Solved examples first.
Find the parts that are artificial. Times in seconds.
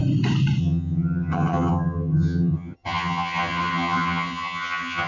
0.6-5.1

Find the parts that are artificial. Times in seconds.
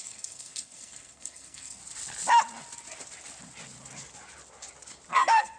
0.0-1.8; 5.1-5.6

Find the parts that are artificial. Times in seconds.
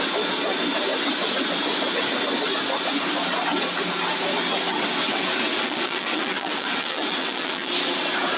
4.7-7.7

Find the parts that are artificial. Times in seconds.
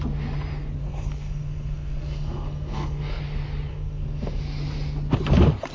0.8-3.2; 3.7-4.4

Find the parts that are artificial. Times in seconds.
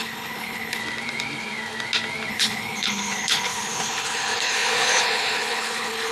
0.0-0.8; 2.3-6.1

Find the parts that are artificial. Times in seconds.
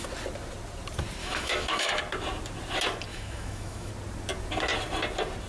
1.2-2.0; 3.1-3.9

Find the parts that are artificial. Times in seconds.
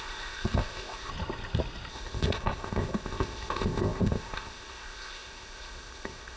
0.0-1.1; 1.9-6.4